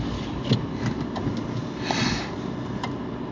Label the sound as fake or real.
real